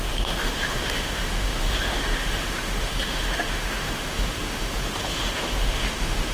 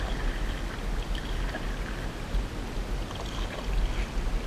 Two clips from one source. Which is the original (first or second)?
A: second